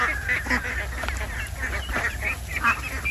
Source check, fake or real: real